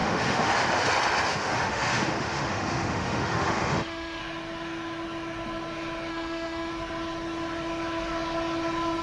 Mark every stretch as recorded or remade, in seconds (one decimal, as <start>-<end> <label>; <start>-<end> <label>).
0.0-0.5 remade; 0.5-1.3 recorded; 1.3-4.2 remade; 4.2-6.1 recorded; 6.1-6.7 remade; 6.7-9.0 recorded